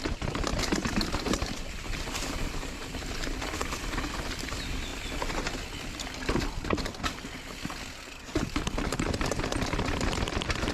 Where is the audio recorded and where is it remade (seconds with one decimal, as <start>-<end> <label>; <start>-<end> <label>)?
0.0-0.5 recorded; 0.5-2.9 remade; 2.9-10.7 recorded